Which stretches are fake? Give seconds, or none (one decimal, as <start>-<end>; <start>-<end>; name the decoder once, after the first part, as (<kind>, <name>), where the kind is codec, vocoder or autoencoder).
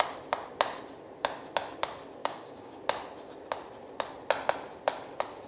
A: 2.2-2.8 (codec, DAC)